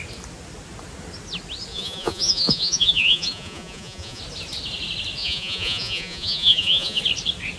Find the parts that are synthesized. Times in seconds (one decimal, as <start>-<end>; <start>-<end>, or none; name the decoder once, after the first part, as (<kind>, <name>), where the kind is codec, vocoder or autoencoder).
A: 1.7-4.2 (vocoder, Vocos); 5.2-7.0